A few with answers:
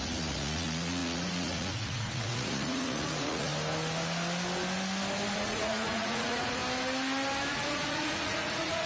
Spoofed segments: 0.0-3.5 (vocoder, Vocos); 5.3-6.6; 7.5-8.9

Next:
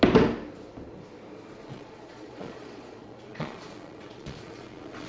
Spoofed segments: 1.6-5.1 (vocoder, Vocos)

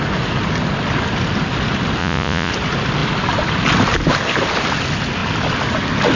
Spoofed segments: 2.0-2.5 (vocoder, Vocos)

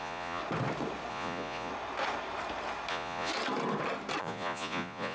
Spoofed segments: 0.0-0.4 (vocoder, Vocos); 1.1-1.7; 2.9-3.3; 4.2-5.1

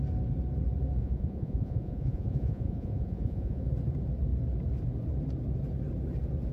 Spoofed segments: 1.0-3.7 (vocoder, Vocos)

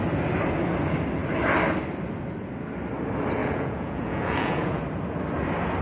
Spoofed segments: 3.4-4.8 (vocoder, Vocos)

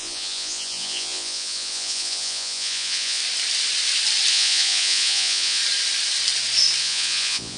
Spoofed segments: 0.0-3.2 (vocoder, Vocos); 4.3-5.6; 6.8-7.6